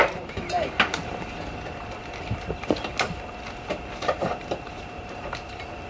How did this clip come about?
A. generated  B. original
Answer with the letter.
B